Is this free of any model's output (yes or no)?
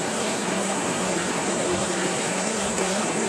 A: no